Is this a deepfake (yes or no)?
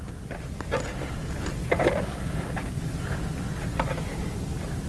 no